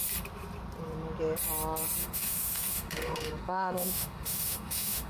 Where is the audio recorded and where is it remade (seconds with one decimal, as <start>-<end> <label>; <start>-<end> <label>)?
0.0-2.0 recorded; 2.0-5.1 remade